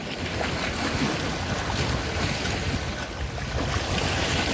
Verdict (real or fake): real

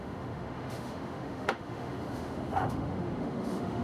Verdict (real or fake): fake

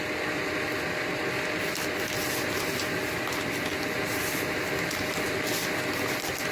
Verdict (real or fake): real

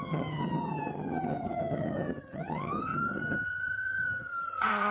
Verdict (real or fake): fake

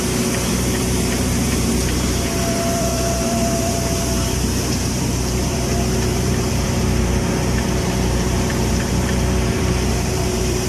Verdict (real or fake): fake